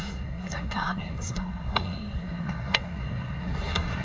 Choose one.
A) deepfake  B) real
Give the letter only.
A